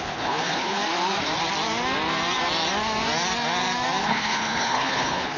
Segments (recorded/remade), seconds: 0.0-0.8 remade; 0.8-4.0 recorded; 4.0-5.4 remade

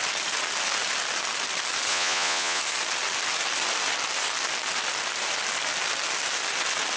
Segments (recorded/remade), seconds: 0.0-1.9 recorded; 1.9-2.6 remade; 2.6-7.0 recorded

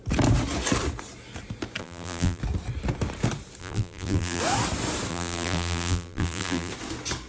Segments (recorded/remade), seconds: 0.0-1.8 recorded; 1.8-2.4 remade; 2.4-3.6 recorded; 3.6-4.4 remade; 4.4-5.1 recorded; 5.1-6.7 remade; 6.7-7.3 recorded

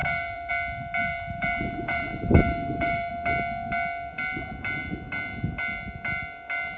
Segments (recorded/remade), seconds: 0.0-0.5 remade; 0.5-1.0 recorded; 1.0-3.1 remade; 3.1-6.8 recorded

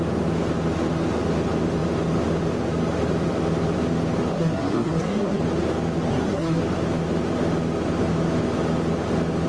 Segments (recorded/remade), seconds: 0.0-4.3 recorded; 4.3-5.4 remade; 5.4-6.1 recorded; 6.1-6.6 remade; 6.6-9.5 recorded